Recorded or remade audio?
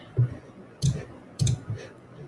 remade